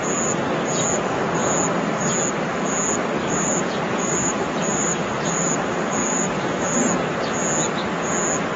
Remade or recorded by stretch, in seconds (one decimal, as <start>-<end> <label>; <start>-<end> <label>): 0.0-3.2 recorded; 3.2-5.5 remade; 5.5-6.0 recorded; 6.0-6.5 remade; 6.5-8.6 recorded